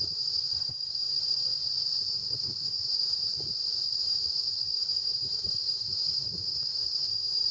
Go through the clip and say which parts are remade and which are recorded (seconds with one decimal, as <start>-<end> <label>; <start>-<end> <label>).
0.0-1.5 remade; 1.5-2.1 recorded; 2.1-3.3 remade; 3.3-4.0 recorded; 4.0-7.5 remade